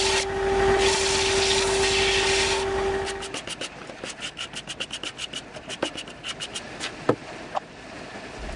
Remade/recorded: recorded